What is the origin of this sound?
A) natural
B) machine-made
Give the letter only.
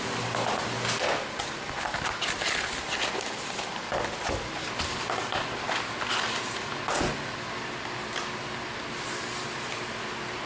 A